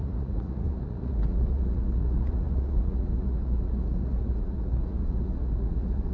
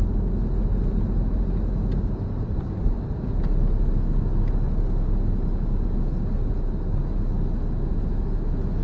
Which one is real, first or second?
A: second